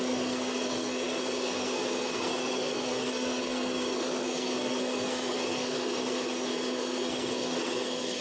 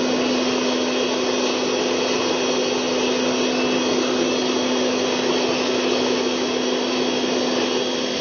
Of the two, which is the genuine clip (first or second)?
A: second